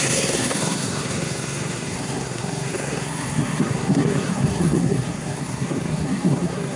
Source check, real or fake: fake